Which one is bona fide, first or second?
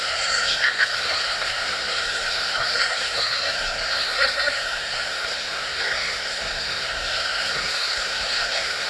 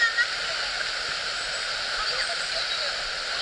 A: second